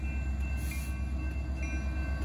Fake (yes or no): no